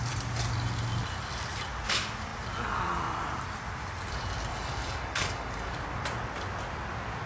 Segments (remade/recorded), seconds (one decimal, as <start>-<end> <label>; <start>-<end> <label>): 0.0-4.5 recorded; 4.5-5.7 remade; 5.7-7.3 recorded